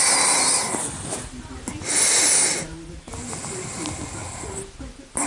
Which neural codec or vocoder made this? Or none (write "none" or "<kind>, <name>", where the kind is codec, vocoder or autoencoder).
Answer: none